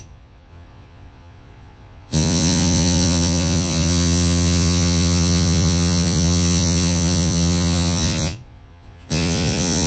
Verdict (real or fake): fake